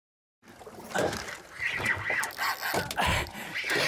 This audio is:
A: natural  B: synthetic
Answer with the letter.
A